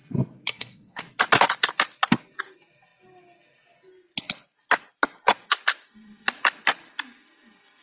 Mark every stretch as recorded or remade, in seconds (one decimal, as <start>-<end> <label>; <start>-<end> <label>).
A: 0.0-0.5 recorded; 0.5-1.0 remade; 1.0-7.8 recorded